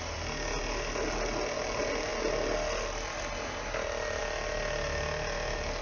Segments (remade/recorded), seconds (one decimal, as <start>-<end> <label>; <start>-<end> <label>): 0.0-5.8 recorded